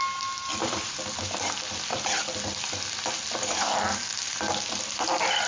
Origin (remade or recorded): recorded